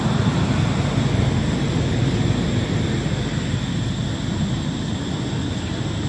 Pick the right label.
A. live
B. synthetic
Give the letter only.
A